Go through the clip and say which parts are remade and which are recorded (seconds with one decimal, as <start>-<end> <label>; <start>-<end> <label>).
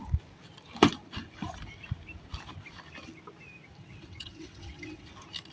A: 0.0-3.8 recorded; 3.8-5.1 remade; 5.1-5.5 recorded